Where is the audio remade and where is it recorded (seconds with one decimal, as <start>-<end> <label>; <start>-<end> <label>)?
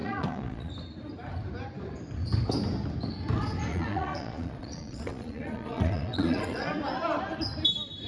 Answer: 0.0-0.7 remade; 0.7-3.7 recorded; 3.7-6.7 remade; 6.7-8.1 recorded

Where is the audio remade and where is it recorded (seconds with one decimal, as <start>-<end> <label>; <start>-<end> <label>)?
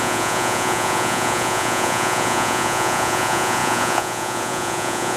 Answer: 0.0-5.2 remade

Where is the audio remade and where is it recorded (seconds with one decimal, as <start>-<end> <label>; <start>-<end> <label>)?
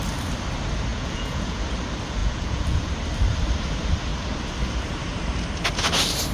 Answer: 0.0-0.9 recorded; 0.9-1.6 remade; 1.6-2.2 recorded; 2.2-2.9 remade; 2.9-6.3 recorded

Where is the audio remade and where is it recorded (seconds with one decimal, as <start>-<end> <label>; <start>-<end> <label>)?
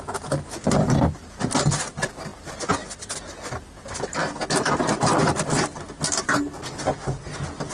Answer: 0.0-7.7 recorded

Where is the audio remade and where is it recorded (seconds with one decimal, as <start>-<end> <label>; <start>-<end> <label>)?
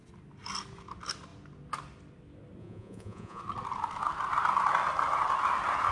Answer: 0.0-2.6 recorded; 2.6-3.4 remade; 3.4-5.9 recorded